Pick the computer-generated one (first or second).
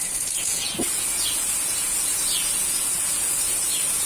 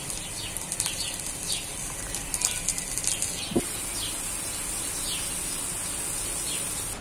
first